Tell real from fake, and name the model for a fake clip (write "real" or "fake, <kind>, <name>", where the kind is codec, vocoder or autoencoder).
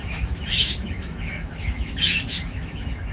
fake, autoencoder, DAC-VAE